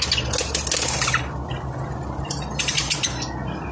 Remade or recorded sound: recorded